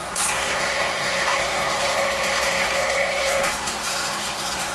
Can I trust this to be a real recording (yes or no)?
no